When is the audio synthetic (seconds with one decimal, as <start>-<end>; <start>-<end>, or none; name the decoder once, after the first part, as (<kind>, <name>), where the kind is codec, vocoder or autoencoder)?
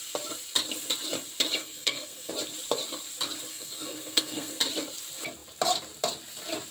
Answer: 1.6-2.3 (codec, SNAC); 3.5-4.6